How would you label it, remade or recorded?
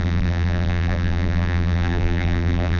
remade